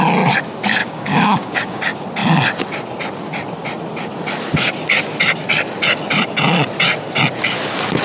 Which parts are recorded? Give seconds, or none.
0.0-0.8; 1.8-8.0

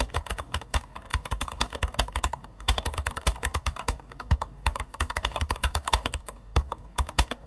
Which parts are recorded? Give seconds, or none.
none

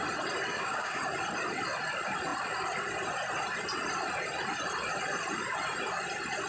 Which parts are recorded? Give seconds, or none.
0.0-0.5; 1.0-6.5